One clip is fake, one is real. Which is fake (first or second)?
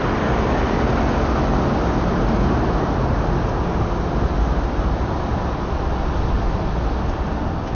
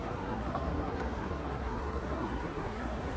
second